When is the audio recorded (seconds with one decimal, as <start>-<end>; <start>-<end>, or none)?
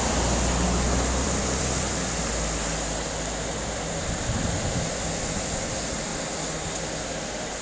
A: 6.1-7.6